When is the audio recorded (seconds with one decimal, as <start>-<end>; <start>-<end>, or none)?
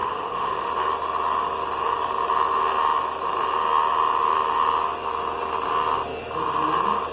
0.7-7.1